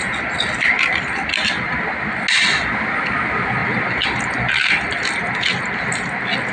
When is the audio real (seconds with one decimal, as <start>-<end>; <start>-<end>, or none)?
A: 0.0-6.5